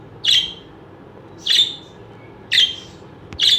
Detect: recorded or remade recorded